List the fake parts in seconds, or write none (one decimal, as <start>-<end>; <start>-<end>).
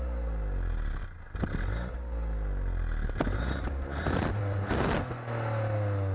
none